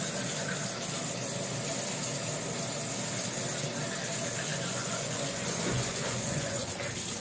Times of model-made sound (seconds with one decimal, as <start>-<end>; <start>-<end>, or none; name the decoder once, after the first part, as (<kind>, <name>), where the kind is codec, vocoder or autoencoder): 4.5-6.7 (vocoder, Vocos)